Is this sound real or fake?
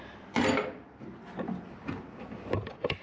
real